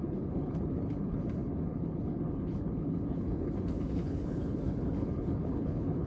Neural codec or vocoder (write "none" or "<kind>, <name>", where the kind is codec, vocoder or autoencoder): codec, HILCodec